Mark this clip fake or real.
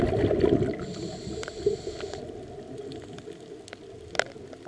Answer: real